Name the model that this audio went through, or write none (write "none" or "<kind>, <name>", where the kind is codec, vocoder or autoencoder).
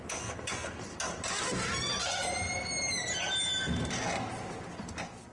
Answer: none